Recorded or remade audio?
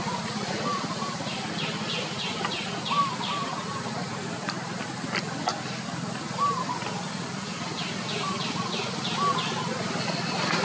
remade